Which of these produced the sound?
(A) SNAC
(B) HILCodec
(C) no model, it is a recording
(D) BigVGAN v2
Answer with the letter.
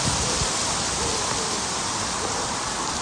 C